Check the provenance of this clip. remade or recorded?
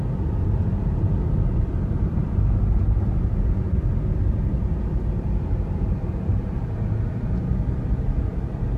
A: recorded